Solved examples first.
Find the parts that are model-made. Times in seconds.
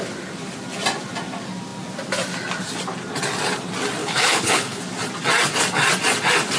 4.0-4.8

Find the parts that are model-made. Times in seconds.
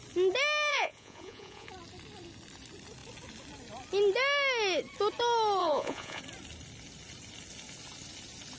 0.7-1.7; 5.6-6.2